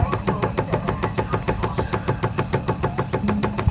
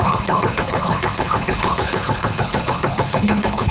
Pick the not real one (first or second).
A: second